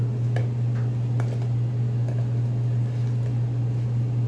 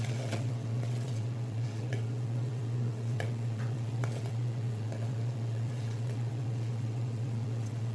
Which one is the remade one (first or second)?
second